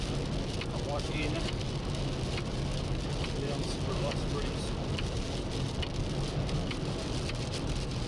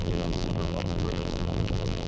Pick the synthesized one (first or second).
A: second